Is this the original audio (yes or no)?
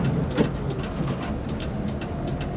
yes